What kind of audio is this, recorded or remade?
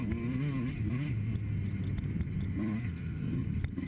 recorded